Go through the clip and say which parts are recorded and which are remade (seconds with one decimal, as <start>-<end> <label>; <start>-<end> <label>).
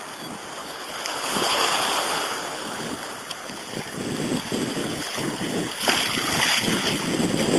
0.0-0.6 recorded; 0.6-4.0 remade; 4.0-4.8 recorded; 4.8-7.0 remade; 7.0-7.6 recorded